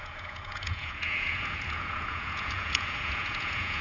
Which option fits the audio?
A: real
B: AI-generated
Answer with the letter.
B